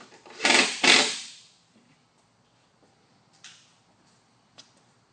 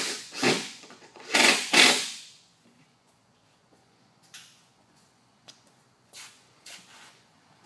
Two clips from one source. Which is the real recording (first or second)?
first